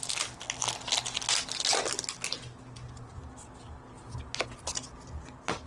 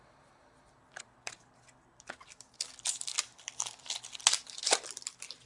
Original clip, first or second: first